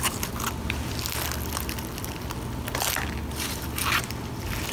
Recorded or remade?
recorded